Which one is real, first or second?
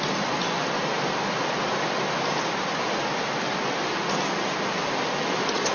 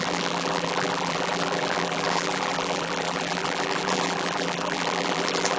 first